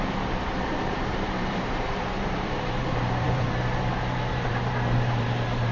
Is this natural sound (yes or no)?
no